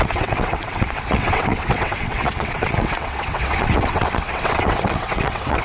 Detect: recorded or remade remade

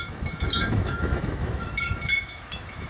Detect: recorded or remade remade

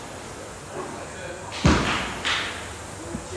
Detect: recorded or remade recorded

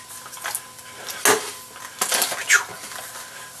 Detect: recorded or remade recorded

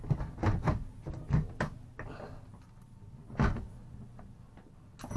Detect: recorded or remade recorded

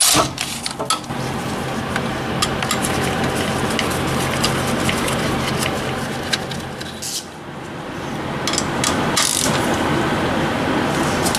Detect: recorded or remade recorded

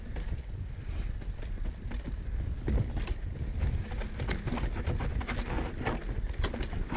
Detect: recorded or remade recorded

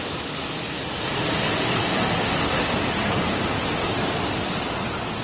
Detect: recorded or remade recorded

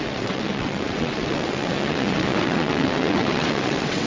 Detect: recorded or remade remade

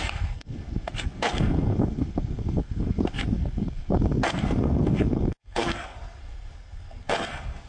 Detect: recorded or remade remade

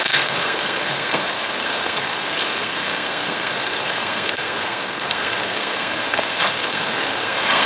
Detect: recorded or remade remade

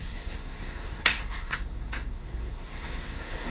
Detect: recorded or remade remade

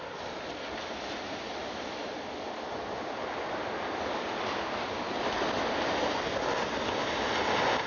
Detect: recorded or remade recorded